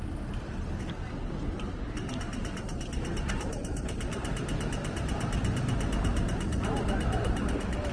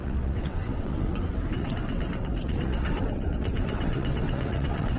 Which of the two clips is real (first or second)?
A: first